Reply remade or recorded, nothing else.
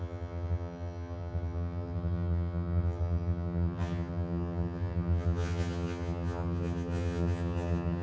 remade